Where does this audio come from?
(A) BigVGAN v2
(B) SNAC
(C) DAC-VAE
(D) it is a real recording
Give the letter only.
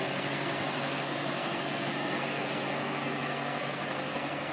B